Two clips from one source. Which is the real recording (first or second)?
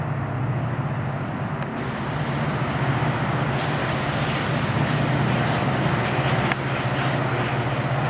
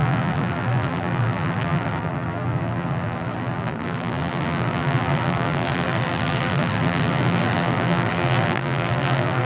first